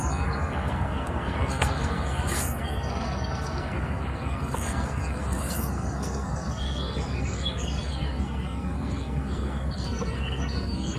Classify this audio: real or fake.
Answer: fake